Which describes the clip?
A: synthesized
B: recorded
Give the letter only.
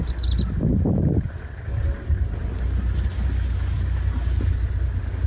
B